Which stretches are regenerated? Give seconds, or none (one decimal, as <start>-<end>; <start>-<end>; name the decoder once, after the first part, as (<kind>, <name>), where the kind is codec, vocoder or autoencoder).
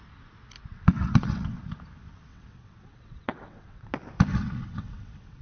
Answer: 0.7-1.6 (vocoder, WaveNeXt); 2.3-3.9; 4.3-5.4